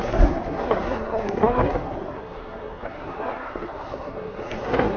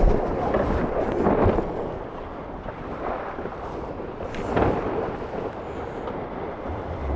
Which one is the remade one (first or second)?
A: first